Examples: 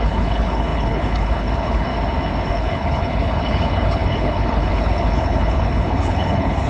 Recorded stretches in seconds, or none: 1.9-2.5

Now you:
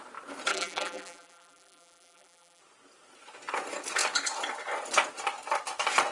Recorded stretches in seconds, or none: 0.0-0.5; 2.6-6.1